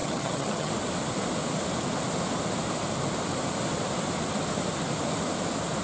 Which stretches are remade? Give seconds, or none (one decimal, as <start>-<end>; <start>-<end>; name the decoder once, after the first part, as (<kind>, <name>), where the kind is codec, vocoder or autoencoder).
0.0-0.7 (vocoder, HiFi-GAN)